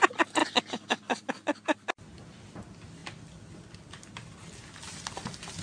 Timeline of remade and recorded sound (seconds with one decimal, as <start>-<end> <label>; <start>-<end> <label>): 0.0-5.6 recorded